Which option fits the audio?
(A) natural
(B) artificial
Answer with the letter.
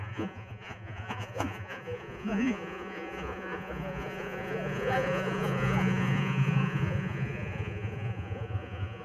B